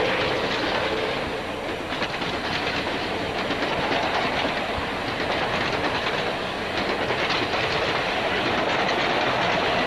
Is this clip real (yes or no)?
yes